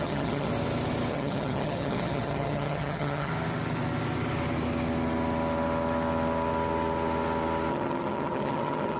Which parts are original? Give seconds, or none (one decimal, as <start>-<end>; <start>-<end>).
0.5-1.1; 3.3-7.7